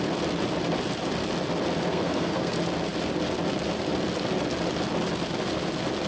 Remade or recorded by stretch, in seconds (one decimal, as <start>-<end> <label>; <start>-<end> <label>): 0.0-1.9 recorded; 1.9-2.5 remade; 2.5-6.1 recorded